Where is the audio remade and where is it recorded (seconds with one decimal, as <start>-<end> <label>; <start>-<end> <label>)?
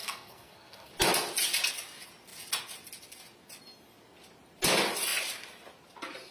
0.0-0.9 remade; 0.9-6.3 recorded